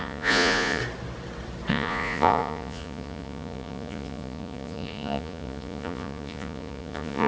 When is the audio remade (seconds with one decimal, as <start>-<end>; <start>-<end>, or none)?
0.0-0.8; 1.7-7.3